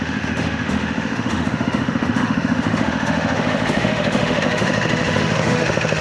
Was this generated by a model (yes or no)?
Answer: yes